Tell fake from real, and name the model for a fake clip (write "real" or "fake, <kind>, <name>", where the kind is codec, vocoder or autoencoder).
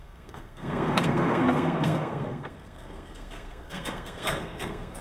fake, codec, SNAC